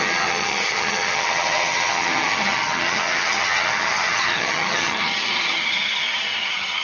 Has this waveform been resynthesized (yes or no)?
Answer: yes